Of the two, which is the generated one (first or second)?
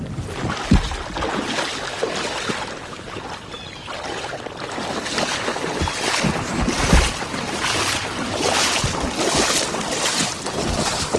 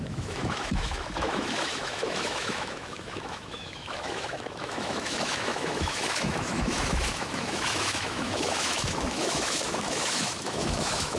second